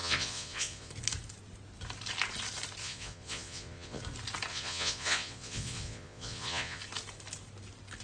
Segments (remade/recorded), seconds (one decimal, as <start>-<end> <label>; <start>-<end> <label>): 0.0-0.9 remade; 0.9-2.8 recorded; 2.8-4.0 remade; 4.0-4.5 recorded; 4.5-6.8 remade; 6.8-8.0 recorded